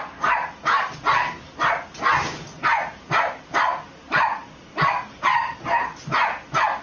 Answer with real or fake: real